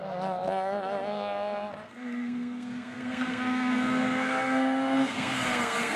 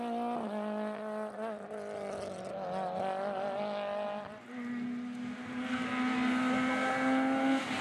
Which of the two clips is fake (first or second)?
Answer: first